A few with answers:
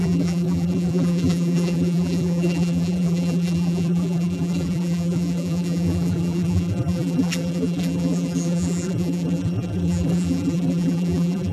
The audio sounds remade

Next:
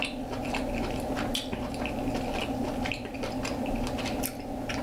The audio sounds recorded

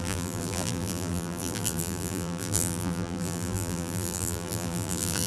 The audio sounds remade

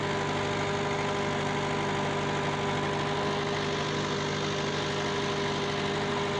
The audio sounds recorded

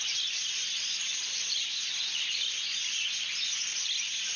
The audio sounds remade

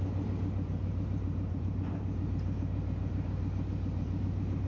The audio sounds remade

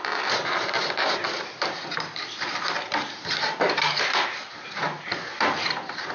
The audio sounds remade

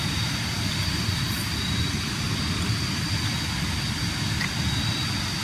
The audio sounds recorded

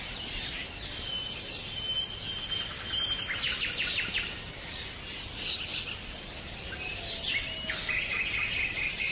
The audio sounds recorded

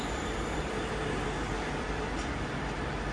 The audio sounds remade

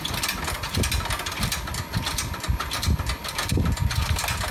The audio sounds recorded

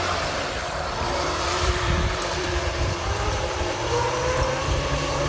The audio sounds remade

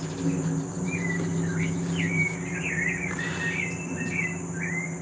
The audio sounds recorded